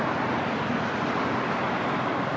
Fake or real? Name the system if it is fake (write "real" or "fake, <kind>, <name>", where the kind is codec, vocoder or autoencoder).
real